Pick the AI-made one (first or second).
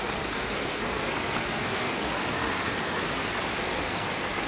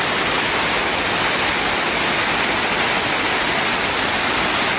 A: first